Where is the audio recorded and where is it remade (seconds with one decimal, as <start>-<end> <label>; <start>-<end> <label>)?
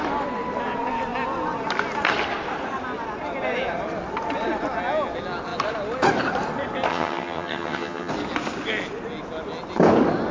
0.0-6.9 recorded; 6.9-8.1 remade; 8.1-10.3 recorded